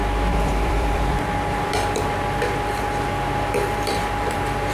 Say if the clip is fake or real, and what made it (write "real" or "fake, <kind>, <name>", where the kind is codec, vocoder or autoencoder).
fake, vocoder, BigVGAN v2